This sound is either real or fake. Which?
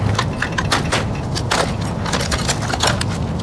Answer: real